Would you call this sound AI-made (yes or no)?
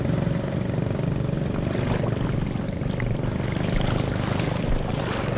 no